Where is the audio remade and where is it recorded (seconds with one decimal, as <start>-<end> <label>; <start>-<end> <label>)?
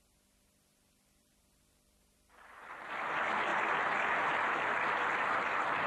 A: 0.0-3.5 remade; 3.5-5.3 recorded; 5.3-5.9 remade